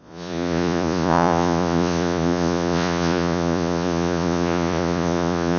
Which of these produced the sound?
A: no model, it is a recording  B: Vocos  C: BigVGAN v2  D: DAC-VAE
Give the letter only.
B